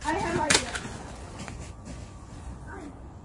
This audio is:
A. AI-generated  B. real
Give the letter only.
A